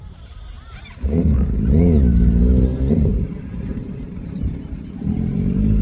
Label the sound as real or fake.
fake